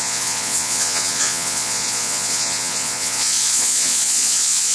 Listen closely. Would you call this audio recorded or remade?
remade